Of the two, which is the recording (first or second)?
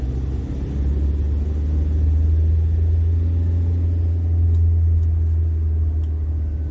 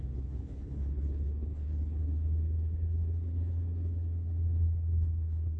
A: first